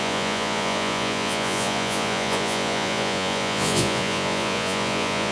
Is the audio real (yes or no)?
no